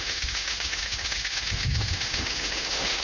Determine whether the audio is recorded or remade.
remade